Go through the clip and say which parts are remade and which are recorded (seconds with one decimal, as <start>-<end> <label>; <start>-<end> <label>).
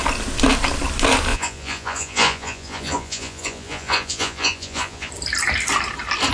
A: 0.0-1.3 recorded; 1.3-5.1 remade; 5.1-6.3 recorded